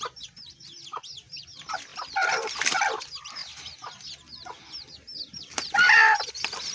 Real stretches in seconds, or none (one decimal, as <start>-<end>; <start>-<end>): 0.0-6.7